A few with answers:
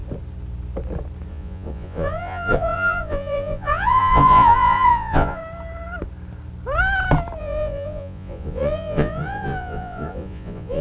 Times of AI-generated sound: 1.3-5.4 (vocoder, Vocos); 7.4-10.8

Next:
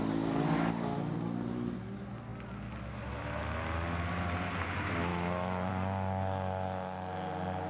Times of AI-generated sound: 5.1-5.7 (autoencoder, DAC-VAE)

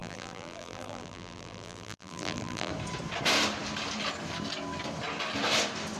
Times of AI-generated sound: 0.0-2.7 (vocoder, BigVGAN v2)